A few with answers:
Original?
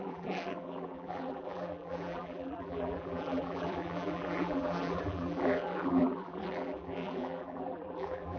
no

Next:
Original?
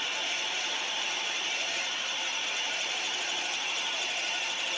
no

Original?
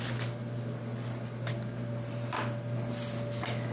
yes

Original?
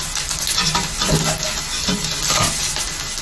yes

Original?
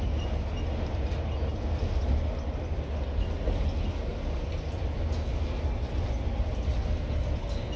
yes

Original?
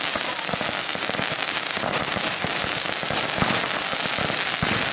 yes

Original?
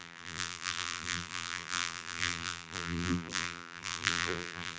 no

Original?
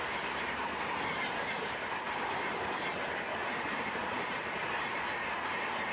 yes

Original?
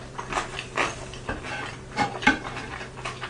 no